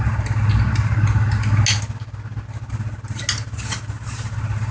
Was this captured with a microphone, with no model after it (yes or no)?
yes